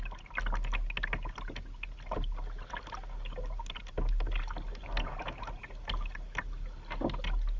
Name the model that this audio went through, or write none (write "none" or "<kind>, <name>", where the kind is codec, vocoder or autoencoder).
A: none